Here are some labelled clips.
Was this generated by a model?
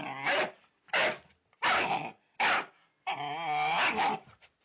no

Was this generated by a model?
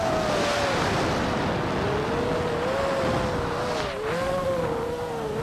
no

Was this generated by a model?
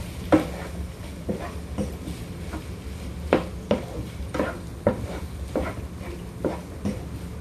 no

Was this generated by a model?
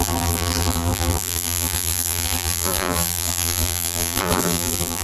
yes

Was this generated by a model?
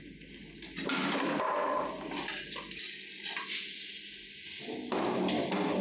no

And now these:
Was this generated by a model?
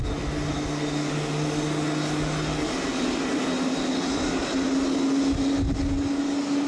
no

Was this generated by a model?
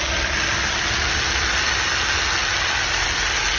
no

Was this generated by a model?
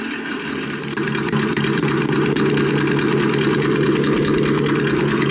no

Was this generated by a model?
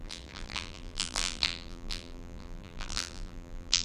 yes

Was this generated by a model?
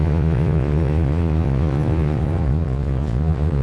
yes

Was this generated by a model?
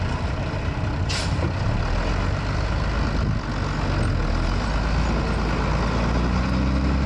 no